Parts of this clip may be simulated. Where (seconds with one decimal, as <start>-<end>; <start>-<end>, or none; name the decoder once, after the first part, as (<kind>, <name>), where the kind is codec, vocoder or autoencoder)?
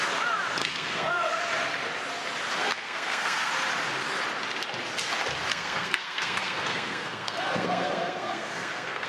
0.6-1.4 (codec, SNAC); 2.6-3.5; 5.5-9.1